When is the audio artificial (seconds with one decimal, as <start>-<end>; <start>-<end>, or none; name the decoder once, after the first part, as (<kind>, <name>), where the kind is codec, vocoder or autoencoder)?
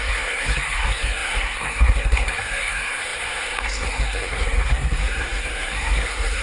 0.0-6.4 (codec, SNAC)